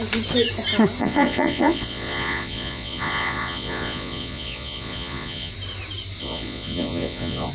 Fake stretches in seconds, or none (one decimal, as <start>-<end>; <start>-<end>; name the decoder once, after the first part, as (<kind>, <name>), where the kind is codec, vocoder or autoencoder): 1.0-5.5 (vocoder, Vocos); 6.2-7.5